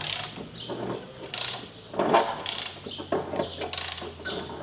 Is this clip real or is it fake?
real